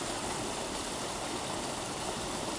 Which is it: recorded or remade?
recorded